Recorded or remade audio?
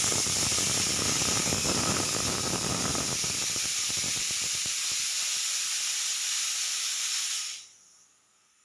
recorded